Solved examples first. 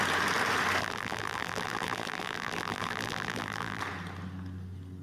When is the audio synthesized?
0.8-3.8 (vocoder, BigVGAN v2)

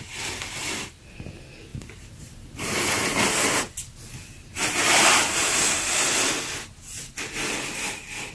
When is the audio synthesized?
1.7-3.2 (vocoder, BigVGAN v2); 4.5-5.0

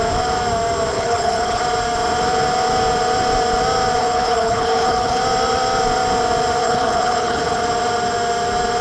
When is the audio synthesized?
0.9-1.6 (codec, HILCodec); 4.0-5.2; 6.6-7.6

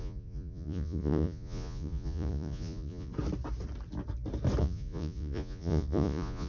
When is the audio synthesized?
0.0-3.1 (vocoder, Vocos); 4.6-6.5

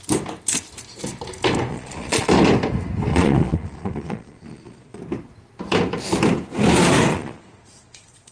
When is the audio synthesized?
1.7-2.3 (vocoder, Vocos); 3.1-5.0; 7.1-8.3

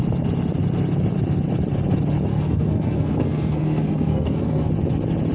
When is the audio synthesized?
2.3-4.7 (codec, SNAC)

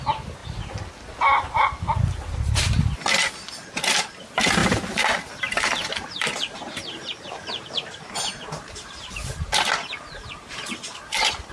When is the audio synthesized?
4.6-9.6 (vocoder, BigVGAN v2)

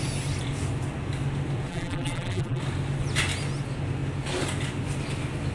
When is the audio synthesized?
1.7-2.6 (vocoder, BigVGAN v2)